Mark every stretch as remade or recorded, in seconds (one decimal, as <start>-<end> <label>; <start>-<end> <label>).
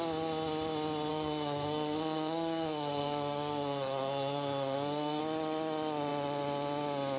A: 0.0-1.1 recorded; 1.1-5.2 remade; 5.2-7.2 recorded